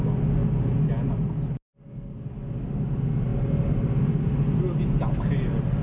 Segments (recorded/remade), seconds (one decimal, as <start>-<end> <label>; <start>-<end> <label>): 0.0-3.3 recorded; 3.3-4.4 remade; 4.4-5.8 recorded